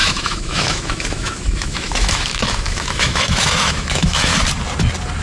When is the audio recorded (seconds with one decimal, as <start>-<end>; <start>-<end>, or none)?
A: 4.3-5.2